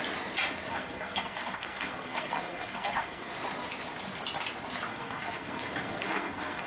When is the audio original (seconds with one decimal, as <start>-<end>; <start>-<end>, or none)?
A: 0.0-0.7; 3.3-4.9